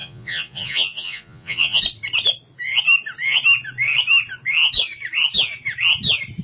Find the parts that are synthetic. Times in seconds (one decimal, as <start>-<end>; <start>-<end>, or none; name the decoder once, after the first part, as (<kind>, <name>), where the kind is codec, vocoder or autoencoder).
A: 0.0-1.8 (vocoder, Vocos)